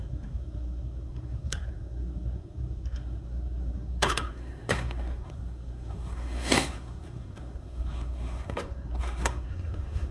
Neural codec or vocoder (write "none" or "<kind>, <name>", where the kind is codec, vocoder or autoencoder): codec, SNAC